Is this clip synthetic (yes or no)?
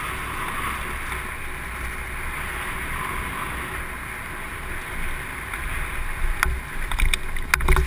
no